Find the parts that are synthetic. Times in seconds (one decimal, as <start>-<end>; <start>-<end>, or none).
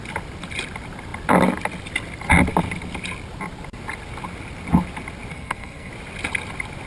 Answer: 5.3-5.9